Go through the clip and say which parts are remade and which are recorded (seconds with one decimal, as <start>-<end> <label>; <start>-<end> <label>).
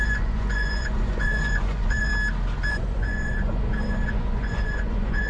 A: 0.0-2.1 remade; 2.1-2.7 recorded; 2.7-5.3 remade